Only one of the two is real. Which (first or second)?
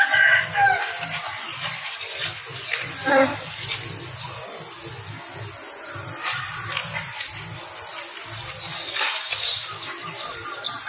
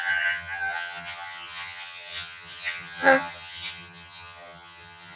first